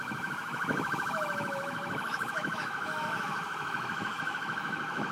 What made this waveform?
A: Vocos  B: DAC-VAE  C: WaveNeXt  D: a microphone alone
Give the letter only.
B